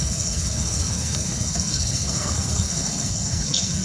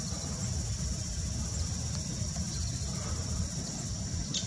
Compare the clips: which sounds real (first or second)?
second